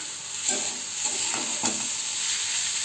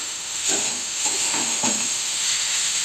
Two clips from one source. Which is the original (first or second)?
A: first